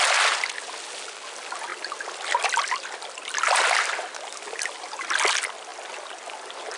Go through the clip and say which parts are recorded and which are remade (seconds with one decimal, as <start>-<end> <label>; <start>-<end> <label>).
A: 0.0-6.8 recorded